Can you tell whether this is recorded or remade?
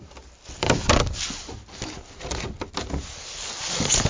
recorded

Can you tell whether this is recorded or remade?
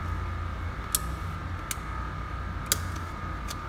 recorded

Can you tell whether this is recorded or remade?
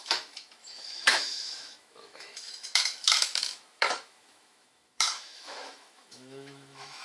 remade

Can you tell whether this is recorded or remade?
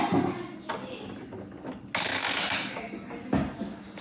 recorded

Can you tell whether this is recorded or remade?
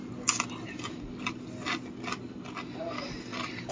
recorded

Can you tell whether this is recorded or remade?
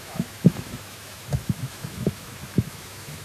remade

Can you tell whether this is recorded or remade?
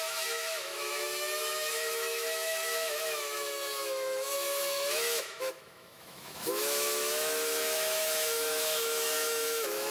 remade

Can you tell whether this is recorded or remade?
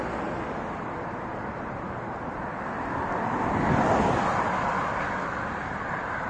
recorded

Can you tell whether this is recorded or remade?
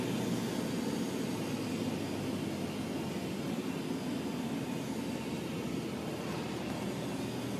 recorded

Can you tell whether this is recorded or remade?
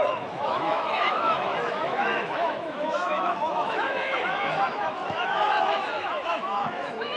remade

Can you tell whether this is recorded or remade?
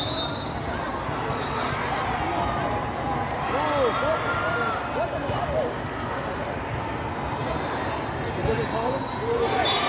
recorded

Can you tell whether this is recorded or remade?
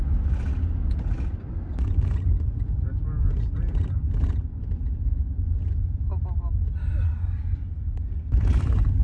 recorded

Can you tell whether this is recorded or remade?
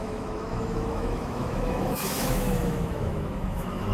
remade